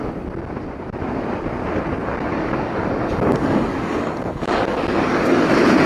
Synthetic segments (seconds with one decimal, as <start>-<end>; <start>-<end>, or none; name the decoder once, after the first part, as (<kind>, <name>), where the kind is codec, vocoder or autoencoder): 2.0-5.5 (codec, DAC)